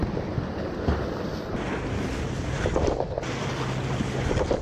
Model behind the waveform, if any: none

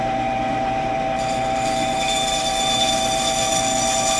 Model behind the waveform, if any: none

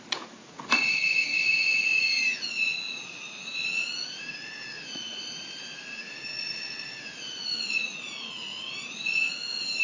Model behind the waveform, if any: vocoder, Vocos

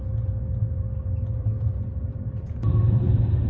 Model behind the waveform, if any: none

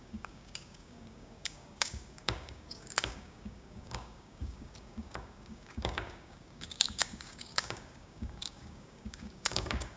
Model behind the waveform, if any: codec, DAC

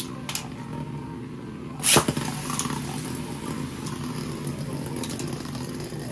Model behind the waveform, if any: none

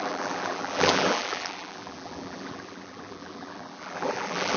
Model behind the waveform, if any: vocoder, BigVGAN v2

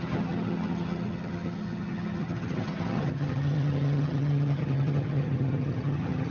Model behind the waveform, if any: vocoder, HiFi-GAN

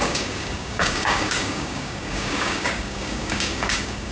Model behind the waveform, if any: codec, DAC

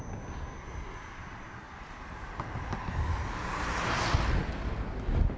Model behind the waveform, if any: none